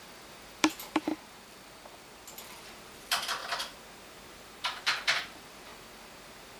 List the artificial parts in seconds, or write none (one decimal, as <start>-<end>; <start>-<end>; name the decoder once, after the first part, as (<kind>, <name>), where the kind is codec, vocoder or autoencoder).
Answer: 0.0-1.1 (vocoder, BigVGAN v2); 2.4-3.4; 4.8-5.7